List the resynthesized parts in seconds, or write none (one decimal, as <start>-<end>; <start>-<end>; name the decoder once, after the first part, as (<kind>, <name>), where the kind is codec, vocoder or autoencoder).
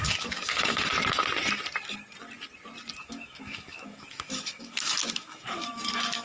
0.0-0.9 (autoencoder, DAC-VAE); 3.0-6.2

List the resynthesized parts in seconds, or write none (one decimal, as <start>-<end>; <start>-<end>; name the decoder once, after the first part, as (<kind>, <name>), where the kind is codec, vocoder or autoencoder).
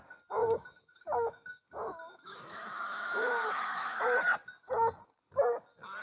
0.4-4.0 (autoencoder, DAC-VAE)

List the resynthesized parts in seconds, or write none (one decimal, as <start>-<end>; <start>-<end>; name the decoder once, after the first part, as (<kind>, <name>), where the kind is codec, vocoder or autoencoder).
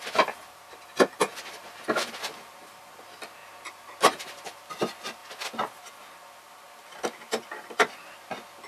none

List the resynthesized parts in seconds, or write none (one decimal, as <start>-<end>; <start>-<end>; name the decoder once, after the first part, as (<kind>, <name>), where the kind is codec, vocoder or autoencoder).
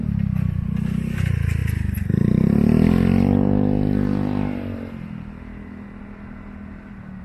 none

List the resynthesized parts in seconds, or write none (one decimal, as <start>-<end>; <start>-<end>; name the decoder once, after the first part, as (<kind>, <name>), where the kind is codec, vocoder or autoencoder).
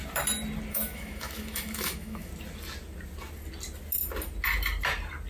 0.7-2.3 (autoencoder, DAC-VAE)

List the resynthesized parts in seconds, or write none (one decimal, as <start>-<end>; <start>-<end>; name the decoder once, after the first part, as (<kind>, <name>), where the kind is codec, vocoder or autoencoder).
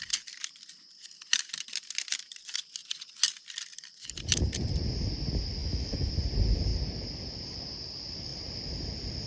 5.6-6.1 (autoencoder, DAC-VAE)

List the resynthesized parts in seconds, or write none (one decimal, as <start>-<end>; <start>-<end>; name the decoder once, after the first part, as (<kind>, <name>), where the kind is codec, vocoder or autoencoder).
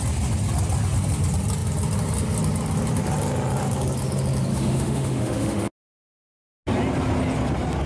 4.5-5.7 (autoencoder, DAC-VAE)